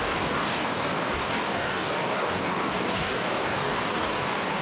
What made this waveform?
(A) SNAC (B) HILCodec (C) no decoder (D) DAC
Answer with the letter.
D